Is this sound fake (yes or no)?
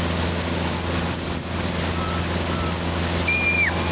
no